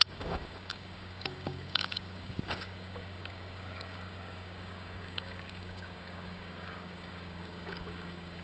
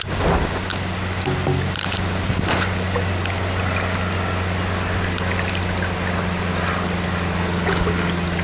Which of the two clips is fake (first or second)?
first